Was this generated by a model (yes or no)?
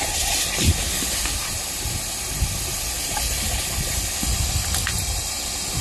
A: no